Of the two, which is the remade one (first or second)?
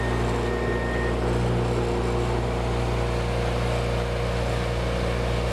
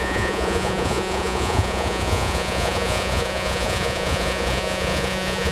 second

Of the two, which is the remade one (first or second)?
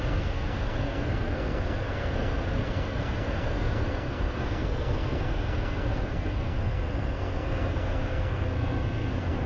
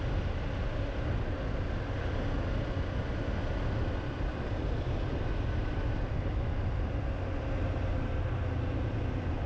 first